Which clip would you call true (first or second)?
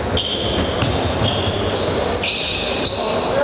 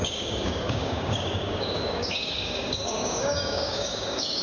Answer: first